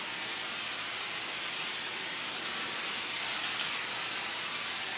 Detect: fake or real real